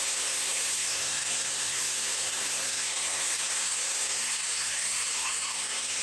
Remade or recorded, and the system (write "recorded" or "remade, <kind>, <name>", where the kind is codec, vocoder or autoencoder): remade, codec, SNAC